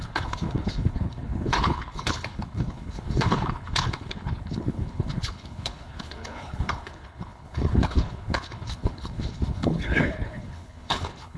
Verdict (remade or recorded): remade